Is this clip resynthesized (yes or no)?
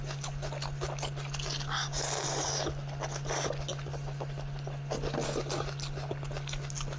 no